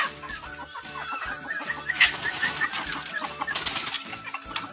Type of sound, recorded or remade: recorded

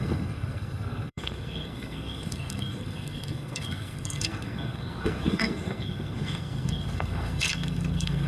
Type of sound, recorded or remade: remade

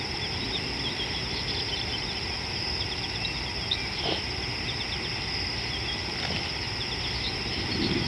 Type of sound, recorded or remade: recorded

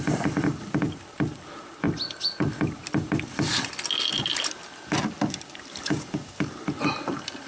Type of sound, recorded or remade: recorded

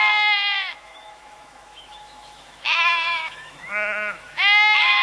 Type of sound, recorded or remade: remade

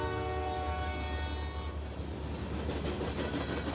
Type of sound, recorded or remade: recorded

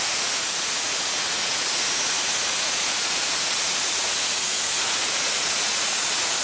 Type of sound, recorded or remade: remade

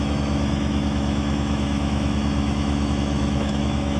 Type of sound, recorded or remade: remade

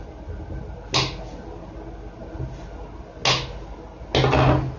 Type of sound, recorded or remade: recorded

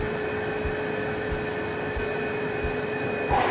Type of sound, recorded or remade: recorded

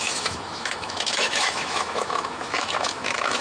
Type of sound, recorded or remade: remade